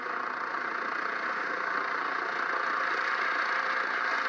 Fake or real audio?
real